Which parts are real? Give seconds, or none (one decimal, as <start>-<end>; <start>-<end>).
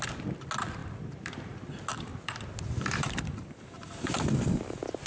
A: 0.0-0.8; 1.7-2.1; 4.1-5.1